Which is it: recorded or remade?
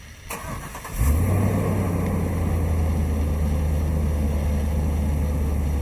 recorded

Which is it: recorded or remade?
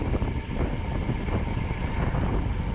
recorded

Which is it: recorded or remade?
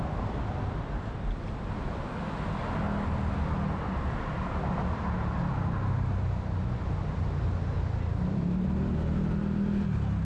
recorded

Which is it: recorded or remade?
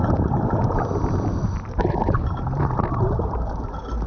recorded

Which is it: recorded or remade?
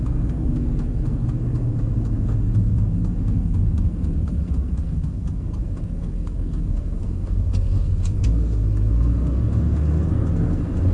remade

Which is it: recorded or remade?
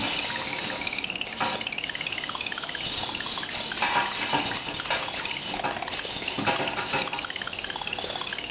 recorded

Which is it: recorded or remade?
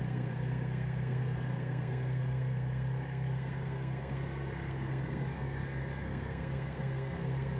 remade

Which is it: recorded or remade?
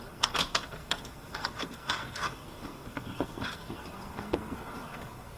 remade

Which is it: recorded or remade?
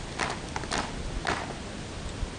recorded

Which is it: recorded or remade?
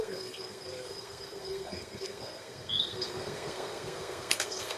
remade